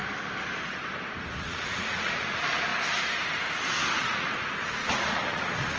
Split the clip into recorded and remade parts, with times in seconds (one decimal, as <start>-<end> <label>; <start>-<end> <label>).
0.0-1.3 recorded; 1.3-2.7 remade; 2.7-3.9 recorded; 3.9-5.8 remade